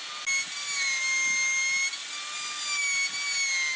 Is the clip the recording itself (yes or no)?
yes